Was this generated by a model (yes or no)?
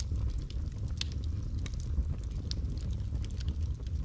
no